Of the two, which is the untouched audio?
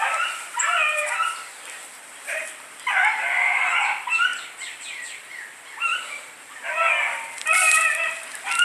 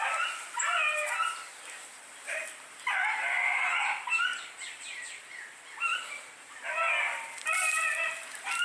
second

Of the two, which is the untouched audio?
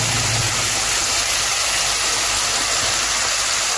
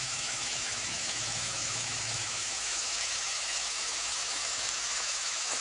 first